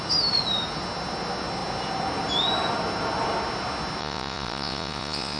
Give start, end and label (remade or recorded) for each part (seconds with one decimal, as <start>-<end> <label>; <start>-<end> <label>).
0.0-4.0 recorded; 4.0-5.4 remade